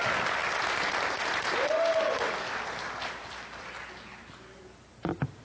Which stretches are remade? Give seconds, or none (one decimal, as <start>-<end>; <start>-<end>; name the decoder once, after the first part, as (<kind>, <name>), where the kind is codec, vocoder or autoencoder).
none